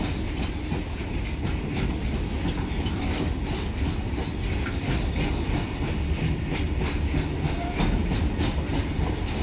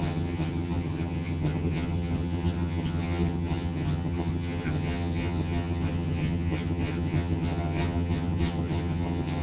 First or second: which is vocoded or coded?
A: second